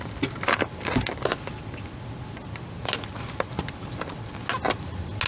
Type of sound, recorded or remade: recorded